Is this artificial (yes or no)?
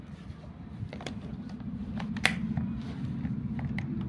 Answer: yes